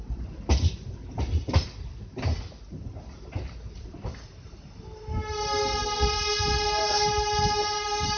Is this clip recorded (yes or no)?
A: yes